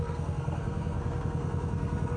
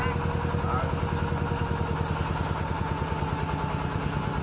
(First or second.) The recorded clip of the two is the second